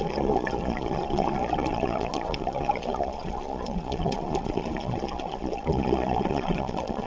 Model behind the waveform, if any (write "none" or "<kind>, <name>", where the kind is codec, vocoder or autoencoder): vocoder, Vocos